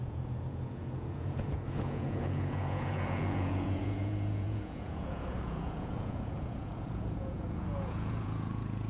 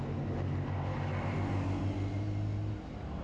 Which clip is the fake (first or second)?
first